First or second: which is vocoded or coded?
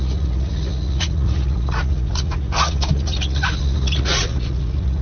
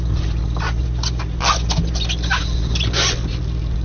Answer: first